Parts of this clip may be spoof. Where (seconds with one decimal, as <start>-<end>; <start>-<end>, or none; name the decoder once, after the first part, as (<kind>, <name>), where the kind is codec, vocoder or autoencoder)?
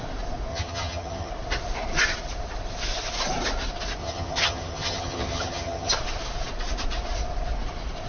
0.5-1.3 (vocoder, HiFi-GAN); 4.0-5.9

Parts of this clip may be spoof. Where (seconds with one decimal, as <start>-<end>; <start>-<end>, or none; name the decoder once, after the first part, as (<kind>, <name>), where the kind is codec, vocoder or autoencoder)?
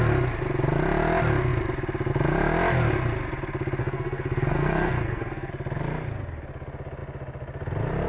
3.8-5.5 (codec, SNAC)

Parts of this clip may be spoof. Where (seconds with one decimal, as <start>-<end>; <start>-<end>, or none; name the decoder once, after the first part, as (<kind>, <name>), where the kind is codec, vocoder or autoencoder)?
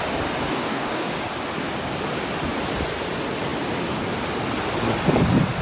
0.5-1.1 (codec, DAC)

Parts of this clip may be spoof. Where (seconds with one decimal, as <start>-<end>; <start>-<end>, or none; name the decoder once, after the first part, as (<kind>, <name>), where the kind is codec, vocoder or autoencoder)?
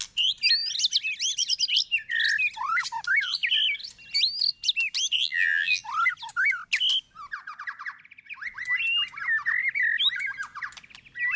5.2-5.8 (vocoder, BigVGAN v2)